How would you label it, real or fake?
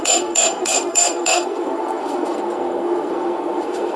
fake